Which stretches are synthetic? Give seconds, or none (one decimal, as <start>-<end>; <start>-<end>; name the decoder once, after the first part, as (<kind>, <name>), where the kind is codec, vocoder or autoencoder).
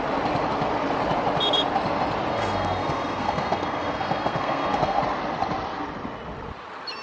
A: 2.3-5.0 (codec, SNAC)